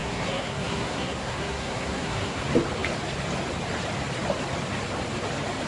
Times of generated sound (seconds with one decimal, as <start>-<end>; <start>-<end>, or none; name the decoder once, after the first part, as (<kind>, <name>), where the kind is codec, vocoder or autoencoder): 0.0-2.4 (codec, SNAC)